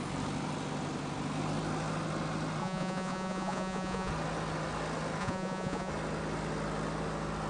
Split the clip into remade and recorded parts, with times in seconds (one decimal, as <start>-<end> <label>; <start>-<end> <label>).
0.0-2.6 recorded; 2.6-4.1 remade; 4.1-5.2 recorded; 5.2-5.9 remade; 5.9-7.5 recorded